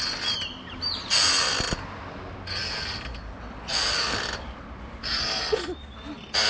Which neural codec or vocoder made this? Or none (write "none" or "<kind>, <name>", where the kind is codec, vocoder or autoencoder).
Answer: none